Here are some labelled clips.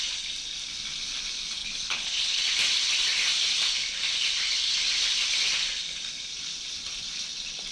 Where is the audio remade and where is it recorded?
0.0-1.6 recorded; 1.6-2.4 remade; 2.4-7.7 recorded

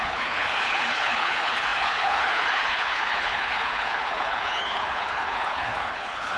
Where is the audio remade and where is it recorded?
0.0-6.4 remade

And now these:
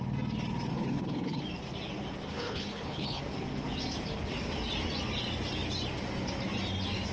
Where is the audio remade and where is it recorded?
0.0-0.7 recorded; 0.7-1.4 remade; 1.4-2.3 recorded; 2.3-3.2 remade; 3.2-7.1 recorded

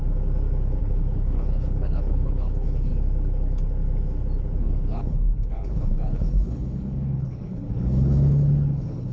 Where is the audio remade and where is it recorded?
0.0-0.8 recorded; 0.8-2.9 remade; 2.9-4.6 recorded; 4.6-9.1 remade

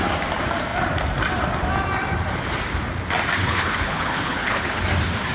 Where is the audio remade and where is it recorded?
0.0-3.4 recorded; 3.4-4.8 remade; 4.8-5.3 recorded